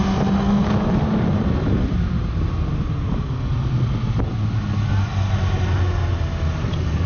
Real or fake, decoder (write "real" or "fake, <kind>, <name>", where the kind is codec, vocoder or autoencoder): real